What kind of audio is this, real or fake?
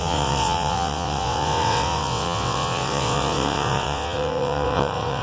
fake